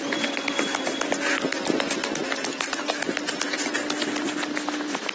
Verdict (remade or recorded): recorded